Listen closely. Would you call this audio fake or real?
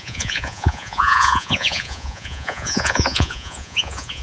fake